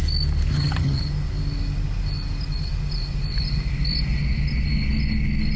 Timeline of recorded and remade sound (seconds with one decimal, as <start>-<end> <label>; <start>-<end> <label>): 0.0-0.5 recorded; 0.5-1.0 remade; 1.0-5.6 recorded